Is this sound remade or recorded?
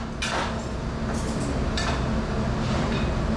recorded